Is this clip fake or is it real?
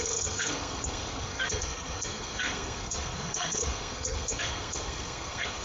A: fake